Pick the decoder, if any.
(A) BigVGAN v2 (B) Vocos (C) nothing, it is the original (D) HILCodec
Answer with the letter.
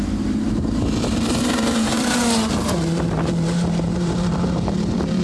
A